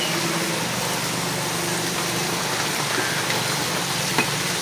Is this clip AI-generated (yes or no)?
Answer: no